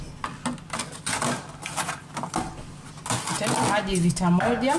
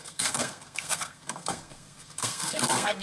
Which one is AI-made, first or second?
second